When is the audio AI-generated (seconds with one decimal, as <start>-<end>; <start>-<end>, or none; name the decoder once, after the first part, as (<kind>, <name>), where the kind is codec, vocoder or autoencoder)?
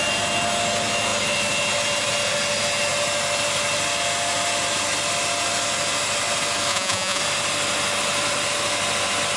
6.7-7.2 (vocoder, Vocos)